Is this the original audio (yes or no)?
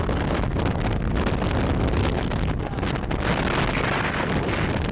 yes